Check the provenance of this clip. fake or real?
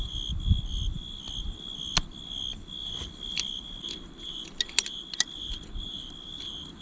real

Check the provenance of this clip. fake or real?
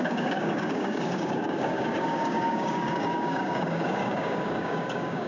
fake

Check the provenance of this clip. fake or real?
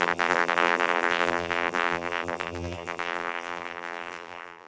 fake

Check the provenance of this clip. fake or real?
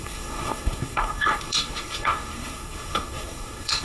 fake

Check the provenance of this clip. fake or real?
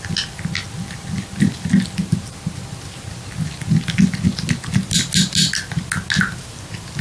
real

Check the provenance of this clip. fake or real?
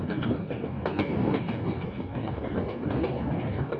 fake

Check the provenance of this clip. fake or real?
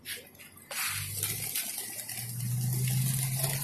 real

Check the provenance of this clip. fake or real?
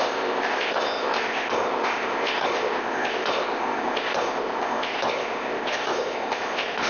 fake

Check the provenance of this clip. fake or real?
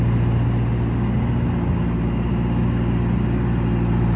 real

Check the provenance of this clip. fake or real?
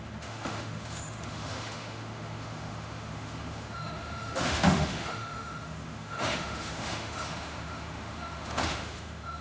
fake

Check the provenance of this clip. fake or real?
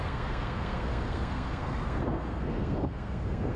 fake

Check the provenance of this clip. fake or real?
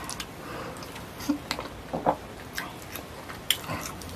real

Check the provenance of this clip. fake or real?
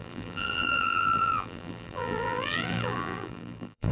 fake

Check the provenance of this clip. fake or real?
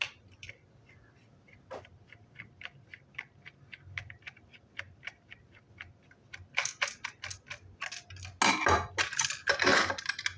real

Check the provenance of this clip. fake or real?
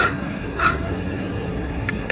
fake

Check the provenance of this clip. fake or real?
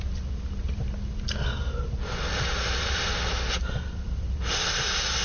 real